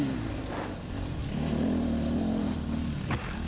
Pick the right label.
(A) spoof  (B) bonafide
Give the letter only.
B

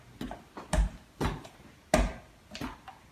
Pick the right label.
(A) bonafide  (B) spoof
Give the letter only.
A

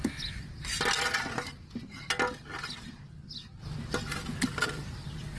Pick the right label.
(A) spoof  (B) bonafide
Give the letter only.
B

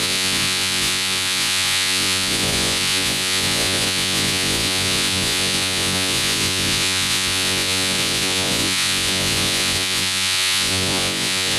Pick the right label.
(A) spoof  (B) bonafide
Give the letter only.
A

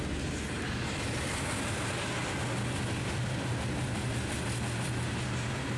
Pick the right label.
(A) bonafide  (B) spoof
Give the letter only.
A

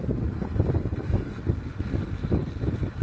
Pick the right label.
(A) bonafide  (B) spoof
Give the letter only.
A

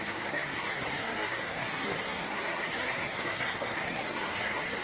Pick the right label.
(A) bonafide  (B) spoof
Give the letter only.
B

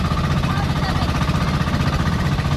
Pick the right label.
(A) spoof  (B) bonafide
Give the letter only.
B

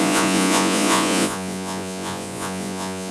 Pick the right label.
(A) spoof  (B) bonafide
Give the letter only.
A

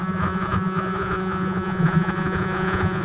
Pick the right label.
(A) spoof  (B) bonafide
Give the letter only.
A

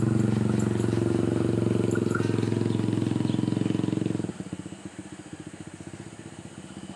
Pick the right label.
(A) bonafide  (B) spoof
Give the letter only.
A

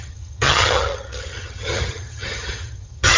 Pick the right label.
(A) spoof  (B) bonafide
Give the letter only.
A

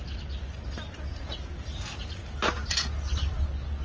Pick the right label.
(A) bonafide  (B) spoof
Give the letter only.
A